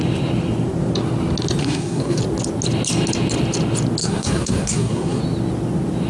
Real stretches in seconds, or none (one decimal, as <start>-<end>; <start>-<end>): 0.0-1.6; 2.2-4.0; 5.2-6.1